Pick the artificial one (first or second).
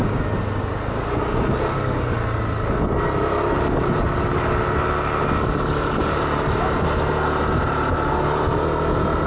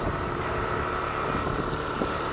second